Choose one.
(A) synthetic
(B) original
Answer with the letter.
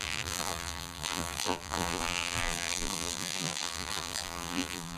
A